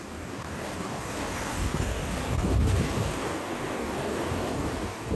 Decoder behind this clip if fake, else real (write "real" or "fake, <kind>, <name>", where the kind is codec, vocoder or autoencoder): fake, codec, DAC